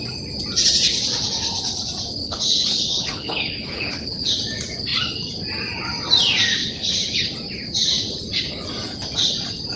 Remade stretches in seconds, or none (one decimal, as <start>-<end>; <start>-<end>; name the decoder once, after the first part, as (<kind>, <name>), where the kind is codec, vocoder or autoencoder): 2.2-4.3 (codec, HILCodec); 6.6-7.3